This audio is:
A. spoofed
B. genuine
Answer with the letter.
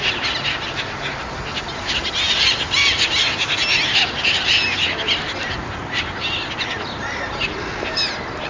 B